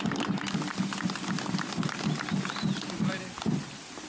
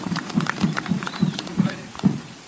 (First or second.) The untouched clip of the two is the first